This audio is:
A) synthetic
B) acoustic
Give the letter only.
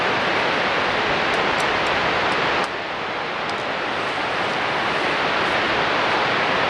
B